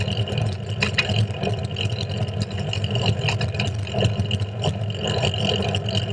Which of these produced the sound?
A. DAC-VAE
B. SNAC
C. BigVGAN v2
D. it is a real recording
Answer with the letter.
D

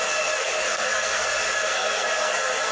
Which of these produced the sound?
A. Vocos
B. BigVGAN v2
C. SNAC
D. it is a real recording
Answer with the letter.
C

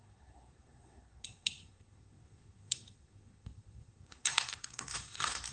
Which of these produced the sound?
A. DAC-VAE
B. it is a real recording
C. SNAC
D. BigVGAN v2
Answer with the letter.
C